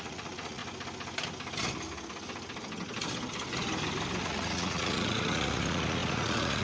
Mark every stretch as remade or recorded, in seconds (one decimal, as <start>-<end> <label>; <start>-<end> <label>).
0.0-0.6 remade; 0.6-4.2 recorded; 4.2-6.6 remade